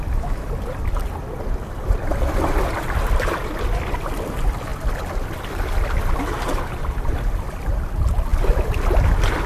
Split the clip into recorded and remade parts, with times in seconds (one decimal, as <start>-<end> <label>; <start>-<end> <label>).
0.0-4.7 recorded; 4.7-5.2 remade; 5.2-9.5 recorded